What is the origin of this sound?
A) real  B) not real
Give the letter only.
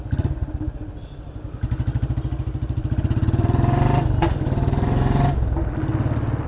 A